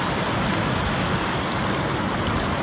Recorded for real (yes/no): yes